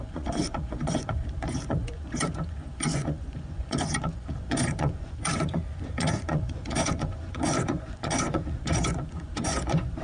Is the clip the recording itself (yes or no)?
no